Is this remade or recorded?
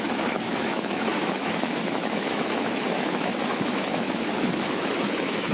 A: remade